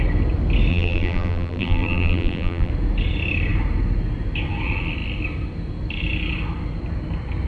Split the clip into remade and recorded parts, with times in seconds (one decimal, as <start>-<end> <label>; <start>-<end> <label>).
0.0-0.7 recorded; 0.7-2.7 remade; 2.7-7.5 recorded